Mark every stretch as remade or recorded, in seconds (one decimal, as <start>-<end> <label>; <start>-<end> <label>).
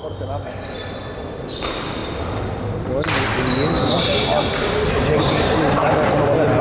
0.0-2.0 remade; 2.0-5.3 recorded; 5.3-6.6 remade